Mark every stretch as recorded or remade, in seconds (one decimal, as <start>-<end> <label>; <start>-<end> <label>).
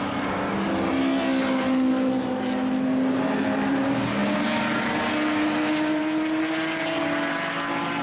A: 0.0-8.0 recorded